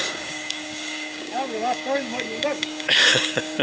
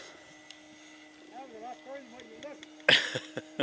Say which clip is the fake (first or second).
first